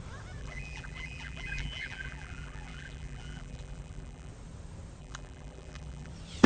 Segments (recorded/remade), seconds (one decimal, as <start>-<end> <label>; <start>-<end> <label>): 0.0-0.4 recorded; 0.4-4.3 remade; 4.3-5.0 recorded; 5.0-6.1 remade; 6.1-6.5 recorded